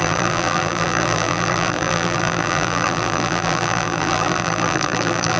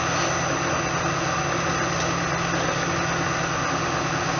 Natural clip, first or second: second